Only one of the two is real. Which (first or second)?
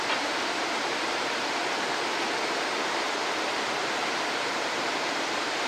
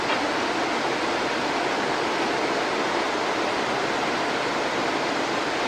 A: second